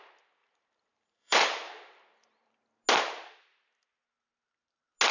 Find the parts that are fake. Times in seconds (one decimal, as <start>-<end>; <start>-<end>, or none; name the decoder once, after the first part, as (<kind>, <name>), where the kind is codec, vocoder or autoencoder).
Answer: 0.4-2.5 (vocoder, BigVGAN v2)